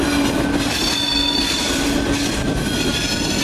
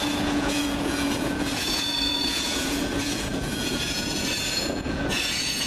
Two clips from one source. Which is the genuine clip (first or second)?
first